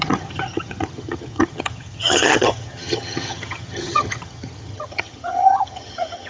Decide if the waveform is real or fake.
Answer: fake